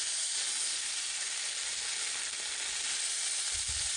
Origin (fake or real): real